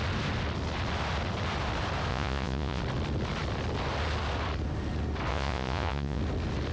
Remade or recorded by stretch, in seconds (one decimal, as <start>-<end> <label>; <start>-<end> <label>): 0.0-2.1 recorded; 2.1-2.8 remade; 2.8-5.3 recorded; 5.3-6.2 remade; 6.2-6.7 recorded